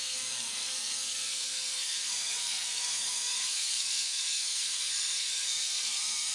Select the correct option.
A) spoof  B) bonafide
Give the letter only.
A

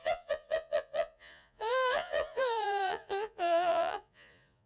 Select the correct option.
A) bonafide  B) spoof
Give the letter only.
B